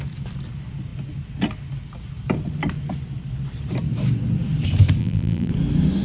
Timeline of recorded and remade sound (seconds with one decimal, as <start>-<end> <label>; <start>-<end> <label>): 0.0-5.0 recorded; 5.0-5.5 remade; 5.5-6.0 recorded